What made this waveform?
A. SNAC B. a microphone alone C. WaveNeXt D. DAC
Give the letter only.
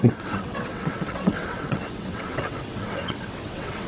C